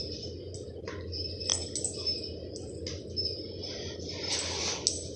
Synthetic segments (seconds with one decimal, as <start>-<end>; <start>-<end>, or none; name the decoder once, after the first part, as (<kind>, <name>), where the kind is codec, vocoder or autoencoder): none